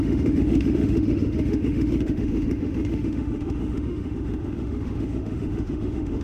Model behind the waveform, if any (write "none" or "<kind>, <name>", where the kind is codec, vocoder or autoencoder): autoencoder, DAC-VAE